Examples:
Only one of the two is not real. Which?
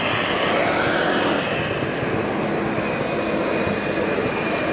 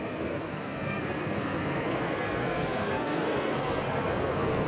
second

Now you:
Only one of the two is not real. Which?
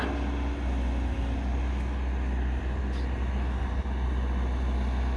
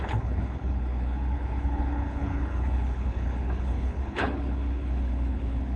second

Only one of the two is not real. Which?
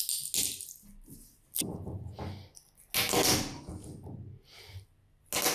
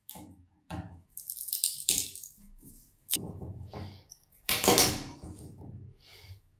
second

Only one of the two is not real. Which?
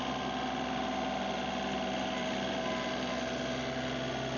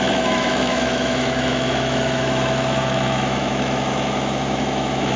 second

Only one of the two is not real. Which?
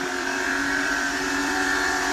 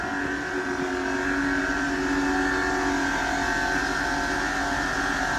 first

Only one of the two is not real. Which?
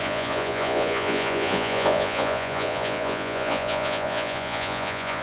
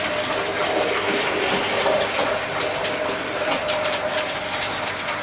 first